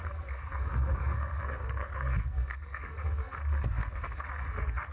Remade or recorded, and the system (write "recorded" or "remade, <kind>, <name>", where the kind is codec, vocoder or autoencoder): remade, codec, SNAC